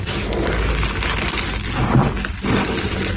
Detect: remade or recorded recorded